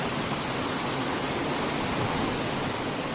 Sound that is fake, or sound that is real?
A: real